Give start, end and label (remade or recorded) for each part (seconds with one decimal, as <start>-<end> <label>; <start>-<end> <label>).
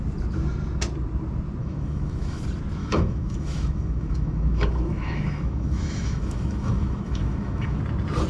0.0-1.6 recorded; 1.6-2.4 remade; 2.4-2.8 recorded; 2.8-7.8 remade; 7.8-8.3 recorded